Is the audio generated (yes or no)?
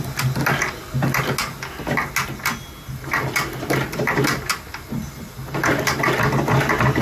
no